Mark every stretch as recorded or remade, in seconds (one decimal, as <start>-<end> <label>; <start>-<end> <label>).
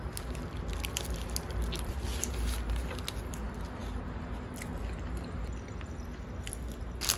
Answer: 0.0-7.2 recorded